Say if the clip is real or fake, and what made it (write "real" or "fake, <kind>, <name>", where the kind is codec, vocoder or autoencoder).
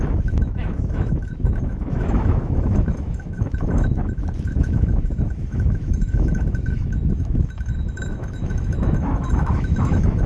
fake, autoencoder, DAC-VAE